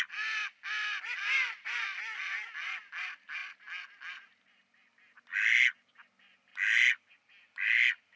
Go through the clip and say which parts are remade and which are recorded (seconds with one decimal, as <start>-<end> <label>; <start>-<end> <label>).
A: 0.0-8.2 recorded